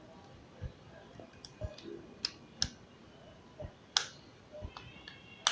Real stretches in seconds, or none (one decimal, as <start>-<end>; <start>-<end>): 0.0-5.5